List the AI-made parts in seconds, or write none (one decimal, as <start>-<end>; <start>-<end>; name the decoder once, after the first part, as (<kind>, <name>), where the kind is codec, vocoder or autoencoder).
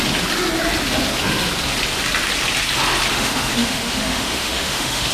3.1-5.1 (autoencoder, DAC-VAE)